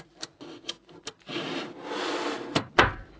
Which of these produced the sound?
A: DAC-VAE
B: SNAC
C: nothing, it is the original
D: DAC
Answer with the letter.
C